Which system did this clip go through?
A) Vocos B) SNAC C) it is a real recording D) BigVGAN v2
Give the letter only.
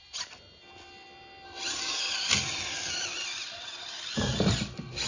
C